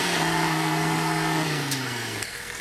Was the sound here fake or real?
fake